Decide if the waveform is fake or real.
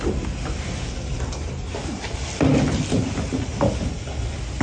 real